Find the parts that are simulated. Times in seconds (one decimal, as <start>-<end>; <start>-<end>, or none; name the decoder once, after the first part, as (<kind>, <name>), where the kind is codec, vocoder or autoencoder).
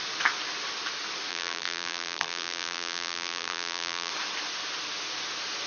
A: 1.3-4.1 (vocoder, BigVGAN v2)